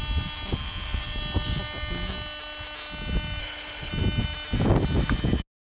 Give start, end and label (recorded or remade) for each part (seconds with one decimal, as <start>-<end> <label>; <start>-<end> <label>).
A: 0.0-3.4 recorded; 3.4-3.9 remade; 3.9-5.6 recorded